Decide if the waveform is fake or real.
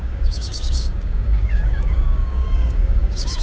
fake